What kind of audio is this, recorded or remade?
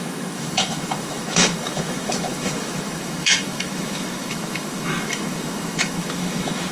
remade